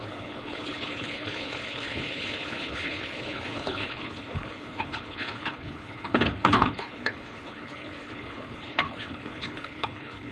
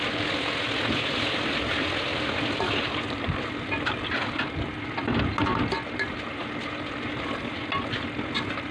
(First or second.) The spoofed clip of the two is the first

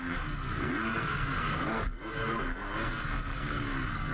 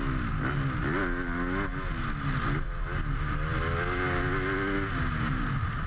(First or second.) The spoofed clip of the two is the first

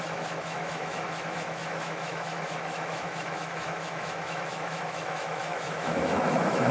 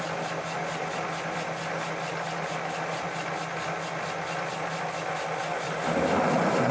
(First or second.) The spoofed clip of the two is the first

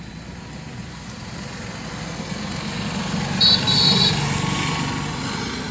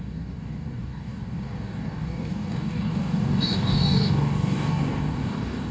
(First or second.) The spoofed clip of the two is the second